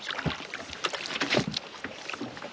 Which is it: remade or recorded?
recorded